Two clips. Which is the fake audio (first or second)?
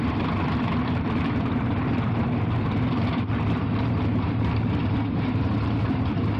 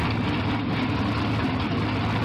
first